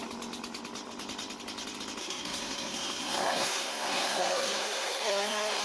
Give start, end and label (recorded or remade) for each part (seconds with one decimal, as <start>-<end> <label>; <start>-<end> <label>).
0.0-2.0 recorded; 2.0-5.6 remade